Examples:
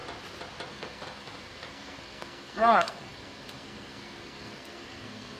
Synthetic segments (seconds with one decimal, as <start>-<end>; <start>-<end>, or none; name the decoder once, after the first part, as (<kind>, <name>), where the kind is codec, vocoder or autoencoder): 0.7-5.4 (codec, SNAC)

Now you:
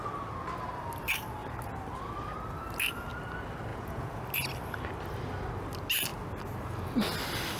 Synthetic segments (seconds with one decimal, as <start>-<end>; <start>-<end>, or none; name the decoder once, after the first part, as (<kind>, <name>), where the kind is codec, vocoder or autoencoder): 3.7-4.2 (vocoder, Vocos)

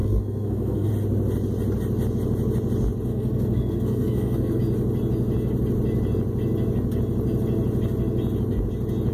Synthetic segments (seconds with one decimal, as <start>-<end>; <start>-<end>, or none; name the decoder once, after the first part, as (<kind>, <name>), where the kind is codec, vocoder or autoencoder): 0.0-0.9 (codec, SNAC); 3.1-4.6

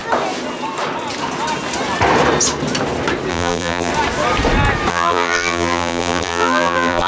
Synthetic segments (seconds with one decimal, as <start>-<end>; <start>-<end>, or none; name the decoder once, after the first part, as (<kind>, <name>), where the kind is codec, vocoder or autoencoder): 3.3-3.9 (vocoder, BigVGAN v2); 4.9-7.1

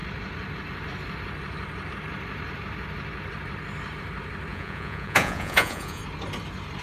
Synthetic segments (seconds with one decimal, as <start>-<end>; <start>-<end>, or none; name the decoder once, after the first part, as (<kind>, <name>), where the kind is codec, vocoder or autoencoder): 4.5-6.0 (vocoder, Vocos)

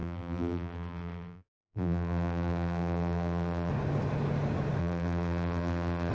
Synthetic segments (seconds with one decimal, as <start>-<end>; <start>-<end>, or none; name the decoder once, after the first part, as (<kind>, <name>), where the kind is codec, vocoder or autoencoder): 0.0-3.7 (vocoder, BigVGAN v2); 4.8-6.1

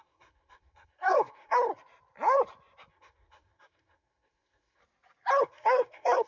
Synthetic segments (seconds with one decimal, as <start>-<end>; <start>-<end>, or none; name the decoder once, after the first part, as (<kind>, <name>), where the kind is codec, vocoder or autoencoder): 0.0-1.7 (codec, SNAC); 2.9-4.8; 5.4-6.3

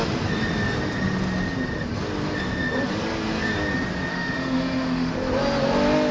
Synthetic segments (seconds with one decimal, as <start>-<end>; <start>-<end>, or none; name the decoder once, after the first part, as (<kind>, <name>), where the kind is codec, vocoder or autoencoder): 4.1-5.1 (autoencoder, DAC-VAE)